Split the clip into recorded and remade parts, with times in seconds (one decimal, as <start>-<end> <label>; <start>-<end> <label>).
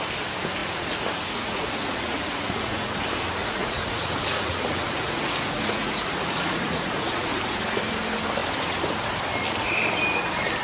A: 0.0-0.6 recorded; 0.6-3.0 remade; 3.0-3.4 recorded; 3.4-7.3 remade; 7.3-10.6 recorded